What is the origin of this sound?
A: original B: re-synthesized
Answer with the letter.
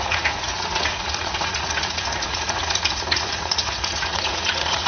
B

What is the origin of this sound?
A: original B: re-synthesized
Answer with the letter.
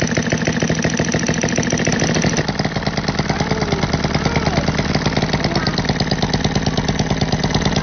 A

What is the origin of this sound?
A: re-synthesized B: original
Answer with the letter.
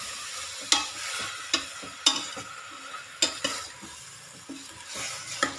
B